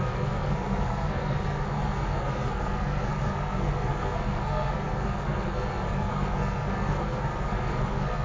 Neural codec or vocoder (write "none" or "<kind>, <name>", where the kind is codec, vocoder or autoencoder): codec, SNAC